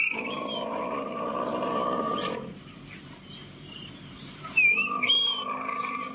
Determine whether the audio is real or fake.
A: fake